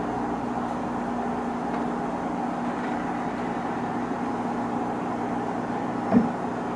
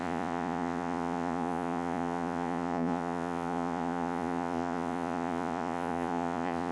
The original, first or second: first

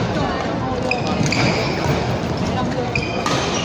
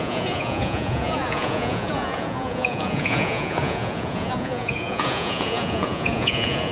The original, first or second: first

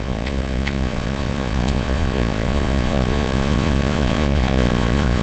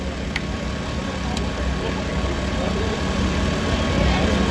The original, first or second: second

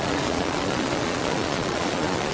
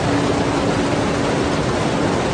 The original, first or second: second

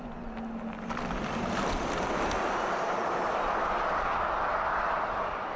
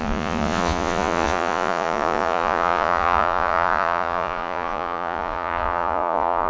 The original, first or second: first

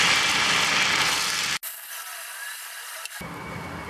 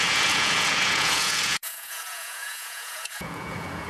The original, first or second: first